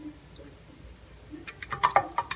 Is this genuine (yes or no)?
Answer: yes